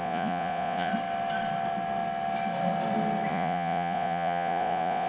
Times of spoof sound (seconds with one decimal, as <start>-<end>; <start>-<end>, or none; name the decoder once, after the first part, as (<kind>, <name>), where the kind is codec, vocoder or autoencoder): 0.0-0.9 (vocoder, Vocos); 3.3-5.1